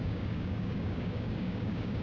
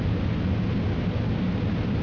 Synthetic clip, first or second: first